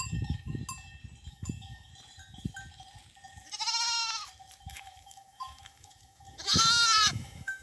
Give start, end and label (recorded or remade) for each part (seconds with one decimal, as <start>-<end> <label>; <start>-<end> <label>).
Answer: 0.0-0.6 remade; 0.6-1.3 recorded; 1.3-1.9 remade; 1.9-4.7 recorded; 4.7-7.6 remade